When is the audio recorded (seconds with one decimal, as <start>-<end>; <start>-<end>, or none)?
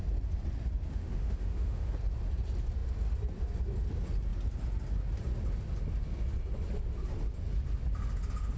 0.0-0.9; 1.9-8.6